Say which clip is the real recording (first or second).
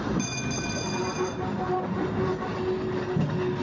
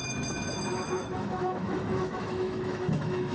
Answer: first